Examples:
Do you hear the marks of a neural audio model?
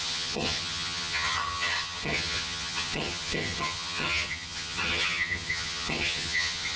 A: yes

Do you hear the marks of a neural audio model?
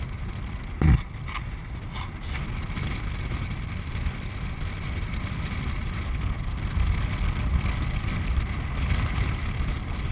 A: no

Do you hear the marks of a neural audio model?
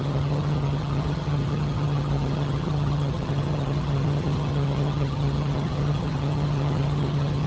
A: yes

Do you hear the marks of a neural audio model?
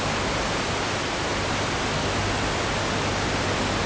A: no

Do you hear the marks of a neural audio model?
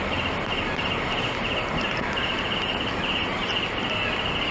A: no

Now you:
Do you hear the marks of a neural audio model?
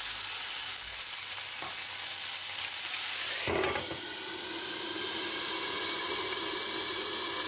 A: no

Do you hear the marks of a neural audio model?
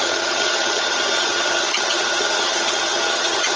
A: yes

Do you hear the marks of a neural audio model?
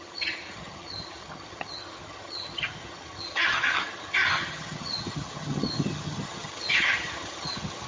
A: yes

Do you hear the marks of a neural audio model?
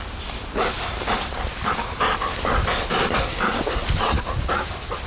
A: no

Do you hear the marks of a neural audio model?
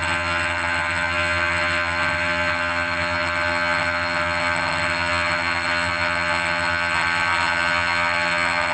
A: yes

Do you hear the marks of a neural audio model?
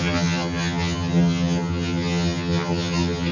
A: yes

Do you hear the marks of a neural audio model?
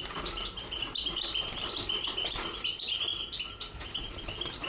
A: no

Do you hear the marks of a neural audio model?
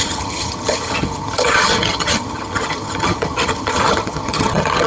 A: yes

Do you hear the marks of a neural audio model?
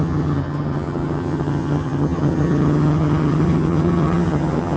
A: yes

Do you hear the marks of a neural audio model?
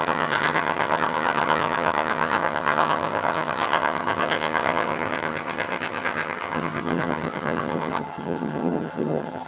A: yes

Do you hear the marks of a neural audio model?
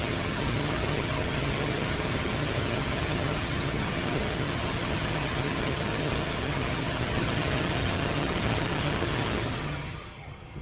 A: yes